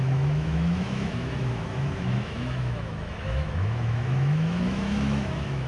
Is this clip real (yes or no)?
no